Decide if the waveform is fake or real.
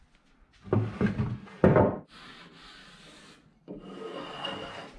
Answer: real